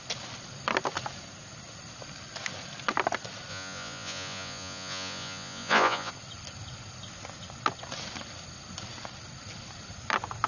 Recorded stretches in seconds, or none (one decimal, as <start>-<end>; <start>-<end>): 0.0-3.5; 6.1-10.5